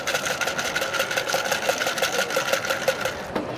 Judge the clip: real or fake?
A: real